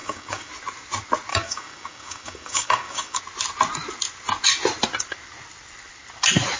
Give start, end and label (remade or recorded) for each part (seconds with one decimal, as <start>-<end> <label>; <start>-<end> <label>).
0.0-0.5 remade; 0.5-1.3 recorded; 1.3-3.2 remade; 3.2-6.6 recorded